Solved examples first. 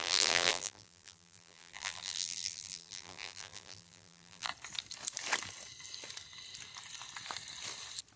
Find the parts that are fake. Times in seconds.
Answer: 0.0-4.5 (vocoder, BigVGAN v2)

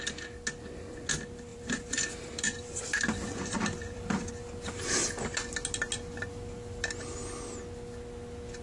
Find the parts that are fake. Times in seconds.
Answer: 1.5-4.3 (vocoder, BigVGAN v2)

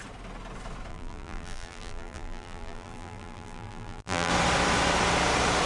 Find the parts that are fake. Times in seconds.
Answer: 0.9-4.3 (vocoder, BigVGAN v2)

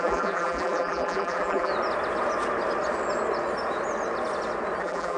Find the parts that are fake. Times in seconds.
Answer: 0.0-1.7 (vocoder, BigVGAN v2); 4.8-5.2